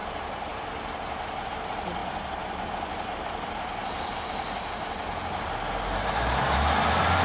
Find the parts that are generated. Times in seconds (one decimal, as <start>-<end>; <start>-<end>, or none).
2.0-2.7